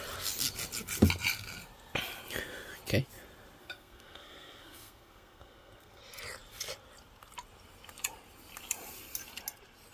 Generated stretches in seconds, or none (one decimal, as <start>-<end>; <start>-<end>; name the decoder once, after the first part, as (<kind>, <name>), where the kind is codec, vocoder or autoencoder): 3.6-6.0 (codec, SNAC)